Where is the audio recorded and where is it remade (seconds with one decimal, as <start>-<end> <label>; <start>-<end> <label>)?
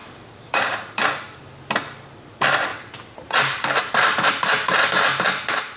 0.0-1.4 remade; 1.4-2.7 recorded; 2.7-4.8 remade; 4.8-5.8 recorded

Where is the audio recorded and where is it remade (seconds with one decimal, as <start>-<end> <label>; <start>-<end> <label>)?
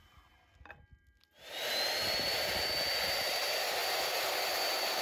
0.0-3.0 recorded; 3.0-3.8 remade; 3.8-4.4 recorded; 4.4-5.0 remade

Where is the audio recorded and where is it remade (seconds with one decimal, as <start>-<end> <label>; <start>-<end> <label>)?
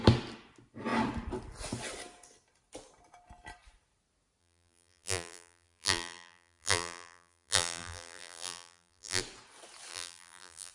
0.0-4.4 recorded; 4.4-9.2 remade; 9.2-9.9 recorded; 9.9-10.7 remade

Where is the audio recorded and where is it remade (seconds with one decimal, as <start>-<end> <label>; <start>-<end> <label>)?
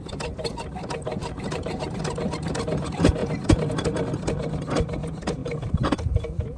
0.0-1.2 recorded; 1.2-2.0 remade; 2.0-5.4 recorded; 5.4-6.0 remade; 6.0-6.6 recorded